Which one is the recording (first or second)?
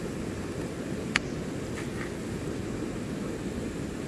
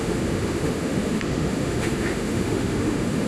first